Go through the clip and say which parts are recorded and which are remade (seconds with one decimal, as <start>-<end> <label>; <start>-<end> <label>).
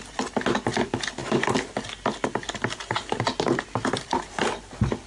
0.0-5.1 recorded